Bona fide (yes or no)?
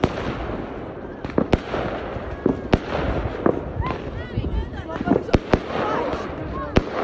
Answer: yes